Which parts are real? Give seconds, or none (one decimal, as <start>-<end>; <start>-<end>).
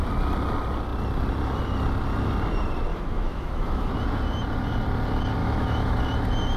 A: 0.0-2.9; 3.9-5.4; 6.0-6.6